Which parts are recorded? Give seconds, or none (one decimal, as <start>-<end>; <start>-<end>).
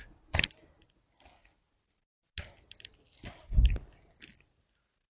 0.0-5.1